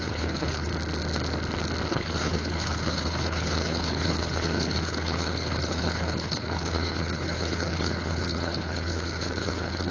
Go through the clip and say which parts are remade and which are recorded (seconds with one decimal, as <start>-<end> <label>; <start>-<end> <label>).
0.0-0.7 remade; 0.7-1.9 recorded; 1.9-9.9 remade